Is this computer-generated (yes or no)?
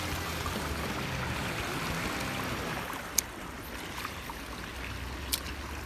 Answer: no